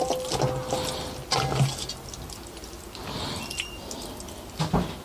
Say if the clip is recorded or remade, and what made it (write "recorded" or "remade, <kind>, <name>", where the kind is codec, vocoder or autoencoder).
recorded